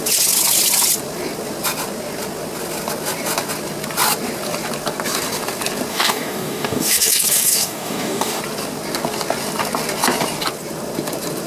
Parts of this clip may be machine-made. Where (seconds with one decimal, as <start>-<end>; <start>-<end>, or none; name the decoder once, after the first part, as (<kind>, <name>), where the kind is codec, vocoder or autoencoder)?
5.9-8.4 (codec, DAC)